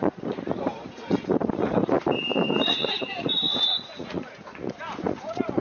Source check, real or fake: fake